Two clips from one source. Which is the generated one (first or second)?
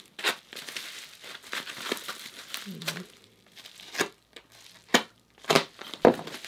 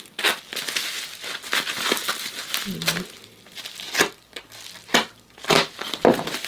first